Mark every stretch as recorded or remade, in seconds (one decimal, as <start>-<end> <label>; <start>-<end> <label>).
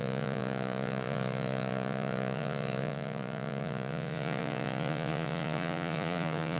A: 0.0-6.6 remade